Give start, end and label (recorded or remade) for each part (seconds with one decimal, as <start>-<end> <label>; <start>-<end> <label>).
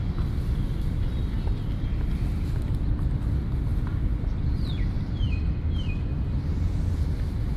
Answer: 0.0-7.6 recorded